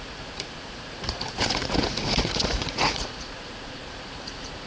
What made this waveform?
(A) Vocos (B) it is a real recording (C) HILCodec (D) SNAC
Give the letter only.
A